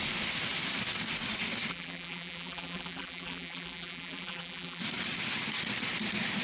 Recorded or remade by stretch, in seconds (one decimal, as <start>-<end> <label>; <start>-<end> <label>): 0.0-1.7 recorded; 1.7-4.8 remade; 4.8-6.4 recorded